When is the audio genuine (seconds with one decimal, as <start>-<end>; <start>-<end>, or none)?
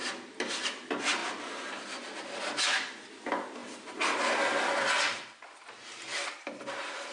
0.0-3.6; 4.2-6.1